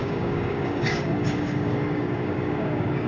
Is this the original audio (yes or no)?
no